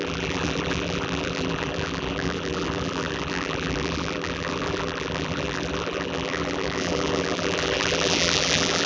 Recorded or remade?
remade